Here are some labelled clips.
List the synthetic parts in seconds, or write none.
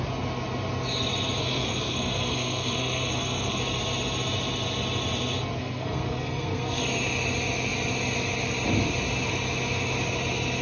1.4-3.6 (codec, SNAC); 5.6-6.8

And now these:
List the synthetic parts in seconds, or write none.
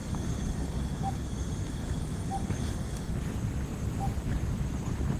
0.0-3.1 (codec, DAC)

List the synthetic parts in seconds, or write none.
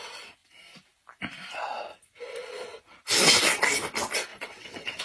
4.3-5.0 (vocoder, WaveNeXt)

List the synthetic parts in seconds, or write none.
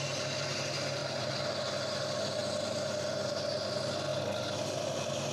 none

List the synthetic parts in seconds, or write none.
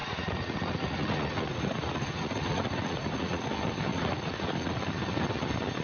0.0-3.5 (vocoder, Vocos); 3.9-4.8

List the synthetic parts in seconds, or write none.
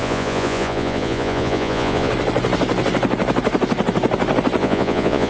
0.0-2.1 (vocoder, Vocos); 4.6-5.3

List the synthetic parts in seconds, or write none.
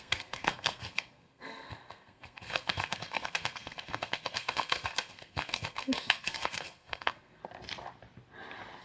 0.0-7.4 (codec, SNAC)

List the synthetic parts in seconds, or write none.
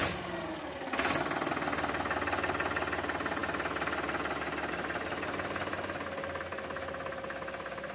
none